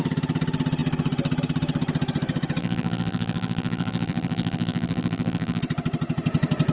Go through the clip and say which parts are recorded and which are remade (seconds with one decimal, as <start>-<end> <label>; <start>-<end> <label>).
0.0-2.6 recorded; 2.6-5.6 remade; 5.6-6.7 recorded